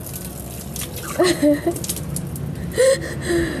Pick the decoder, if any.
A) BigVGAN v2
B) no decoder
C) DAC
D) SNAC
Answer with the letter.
B